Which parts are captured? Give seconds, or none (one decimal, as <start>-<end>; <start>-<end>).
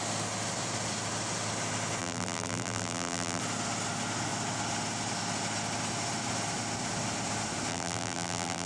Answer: 0.0-2.0; 3.4-7.7